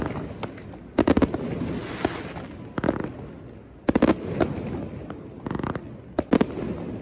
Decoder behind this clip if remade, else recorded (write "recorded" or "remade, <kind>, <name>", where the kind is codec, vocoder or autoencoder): recorded